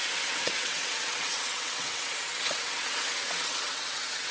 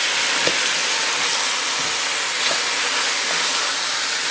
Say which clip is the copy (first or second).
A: first